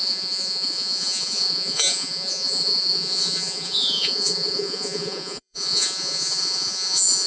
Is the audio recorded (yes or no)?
no